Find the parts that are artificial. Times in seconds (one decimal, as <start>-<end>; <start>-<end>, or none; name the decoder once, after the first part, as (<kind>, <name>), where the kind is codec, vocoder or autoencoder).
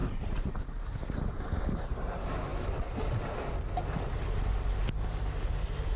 none